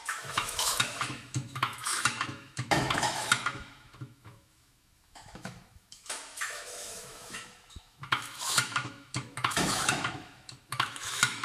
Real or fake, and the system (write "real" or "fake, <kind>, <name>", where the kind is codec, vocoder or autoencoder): fake, autoencoder, DAC-VAE